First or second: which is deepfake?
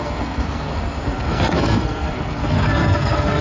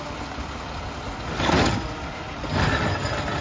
first